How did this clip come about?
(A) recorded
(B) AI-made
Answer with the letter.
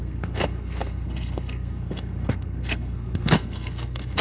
B